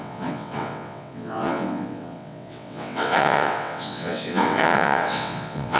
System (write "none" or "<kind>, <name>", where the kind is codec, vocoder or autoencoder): vocoder, WaveNeXt